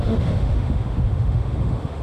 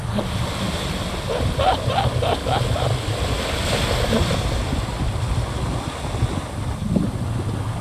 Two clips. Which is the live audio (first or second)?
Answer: second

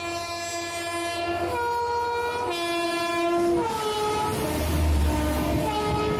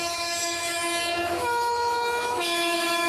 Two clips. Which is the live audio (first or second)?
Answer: first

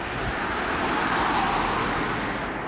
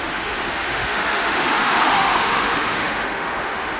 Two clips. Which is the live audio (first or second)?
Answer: first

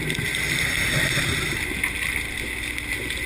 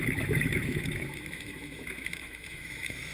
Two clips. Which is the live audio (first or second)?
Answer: first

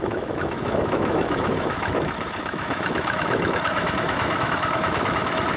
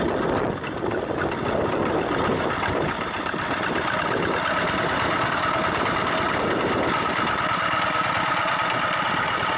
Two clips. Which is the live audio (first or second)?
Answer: second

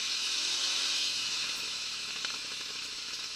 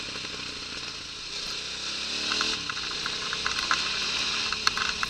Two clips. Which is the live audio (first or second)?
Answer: second